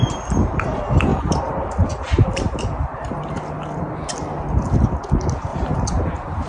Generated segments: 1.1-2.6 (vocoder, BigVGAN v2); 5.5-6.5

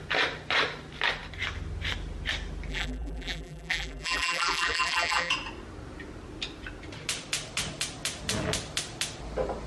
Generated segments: 2.7-5.3 (vocoder, BigVGAN v2)

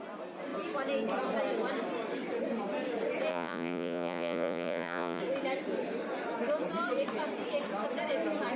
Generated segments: 3.3-5.2 (vocoder, Vocos)

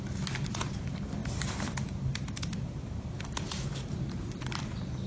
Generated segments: 0.0-5.1 (vocoder, BigVGAN v2)

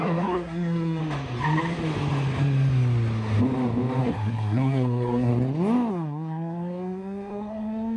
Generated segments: 0.0-1.0 (codec, SNAC); 4.0-5.3; 5.9-8.0